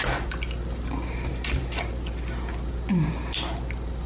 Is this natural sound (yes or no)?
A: yes